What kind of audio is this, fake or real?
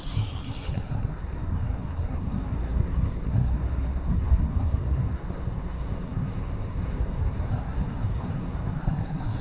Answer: fake